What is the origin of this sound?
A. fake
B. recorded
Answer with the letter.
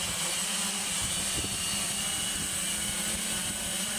B